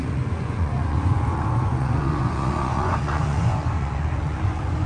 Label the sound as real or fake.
fake